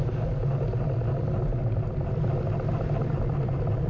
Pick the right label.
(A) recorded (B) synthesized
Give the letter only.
A